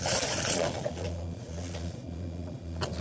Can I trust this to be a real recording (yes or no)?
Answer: no